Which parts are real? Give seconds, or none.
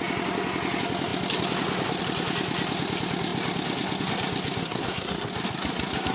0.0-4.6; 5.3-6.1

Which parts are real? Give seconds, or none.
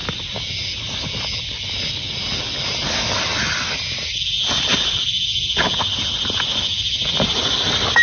0.0-8.0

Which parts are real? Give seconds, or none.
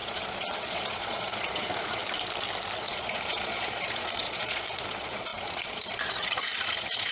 2.0-2.8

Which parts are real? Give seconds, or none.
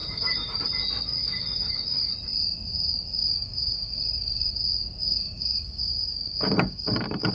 0.6-1.2; 2.1-3.2; 4.5-5.0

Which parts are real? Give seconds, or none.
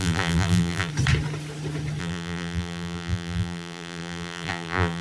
0.9-2.0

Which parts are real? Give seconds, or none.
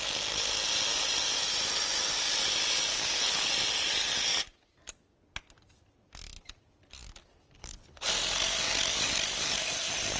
0.0-2.9; 3.5-7.6; 8.1-10.2